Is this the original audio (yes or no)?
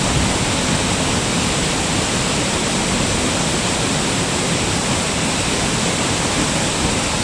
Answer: yes